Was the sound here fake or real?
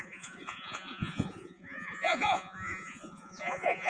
fake